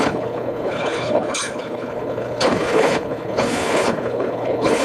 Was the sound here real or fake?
fake